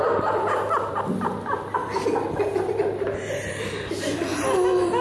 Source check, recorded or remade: recorded